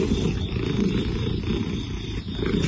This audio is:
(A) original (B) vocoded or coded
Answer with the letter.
A